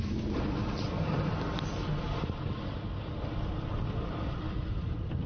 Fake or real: real